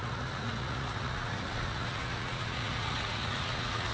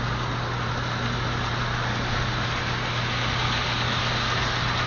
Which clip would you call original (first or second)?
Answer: second